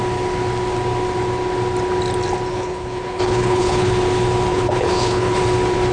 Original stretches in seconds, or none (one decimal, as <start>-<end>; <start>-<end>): 0.0-2.5; 3.9-4.5; 5.4-5.9